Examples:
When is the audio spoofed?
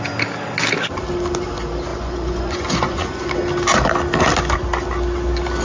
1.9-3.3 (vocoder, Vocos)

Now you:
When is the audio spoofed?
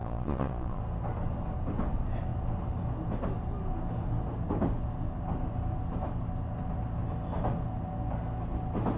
0.0-0.8 (vocoder, Vocos)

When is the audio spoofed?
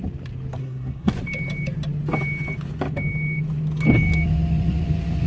0.6-1.1 (codec, SNAC)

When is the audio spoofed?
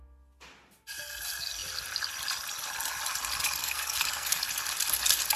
3.6-4.4 (codec, SNAC)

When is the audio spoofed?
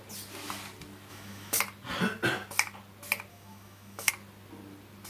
1.1-1.6 (autoencoder, DAC-VAE); 3.3-4.1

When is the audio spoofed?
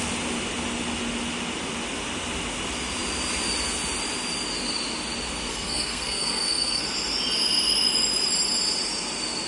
5.5-6.8 (codec, SNAC)